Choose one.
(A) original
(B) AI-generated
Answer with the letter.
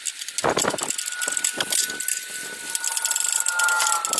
A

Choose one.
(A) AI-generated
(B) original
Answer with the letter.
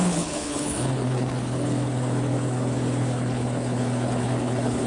A